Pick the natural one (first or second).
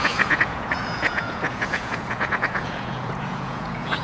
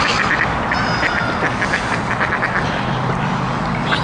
second